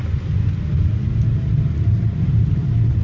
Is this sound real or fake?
real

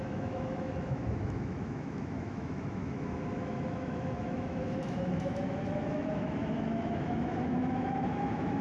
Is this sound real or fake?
fake